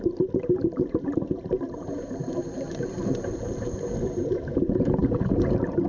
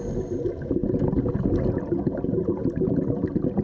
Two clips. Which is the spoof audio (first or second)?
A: first